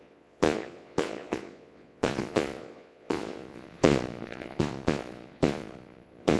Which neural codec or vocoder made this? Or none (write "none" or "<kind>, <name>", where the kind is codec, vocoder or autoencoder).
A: vocoder, Vocos